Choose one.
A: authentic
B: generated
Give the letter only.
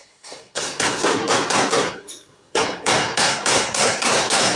B